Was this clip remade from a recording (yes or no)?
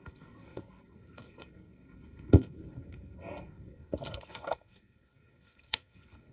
yes